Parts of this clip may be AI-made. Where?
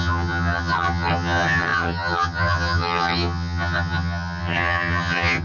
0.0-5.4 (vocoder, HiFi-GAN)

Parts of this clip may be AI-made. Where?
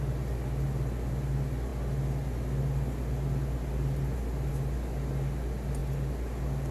none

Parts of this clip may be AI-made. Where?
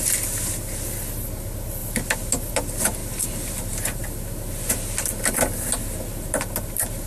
none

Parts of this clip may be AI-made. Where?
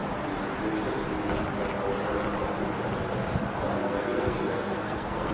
3.8-5.3 (codec, SNAC)